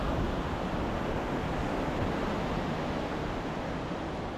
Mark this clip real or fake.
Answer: real